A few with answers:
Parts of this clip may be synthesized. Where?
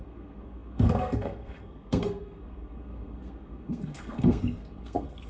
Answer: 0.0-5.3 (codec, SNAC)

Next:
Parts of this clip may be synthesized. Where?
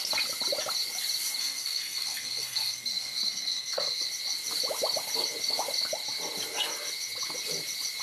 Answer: 1.4-4.1 (codec, SNAC)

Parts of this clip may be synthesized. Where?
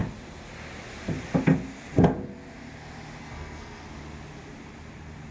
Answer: 3.2-3.8 (codec, SNAC)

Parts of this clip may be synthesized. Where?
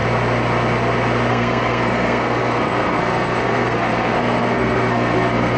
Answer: 1.3-5.6 (codec, SNAC)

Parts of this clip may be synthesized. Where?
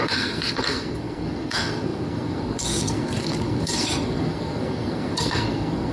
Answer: 0.0-5.9 (codec, SNAC)